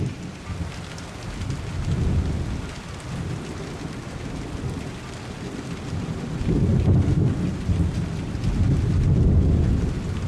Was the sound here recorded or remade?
recorded